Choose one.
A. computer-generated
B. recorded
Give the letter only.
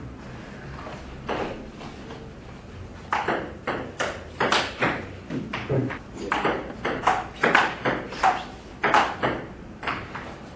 B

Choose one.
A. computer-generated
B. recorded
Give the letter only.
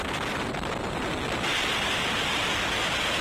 B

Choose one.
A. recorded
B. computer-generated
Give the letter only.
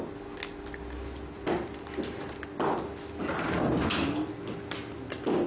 A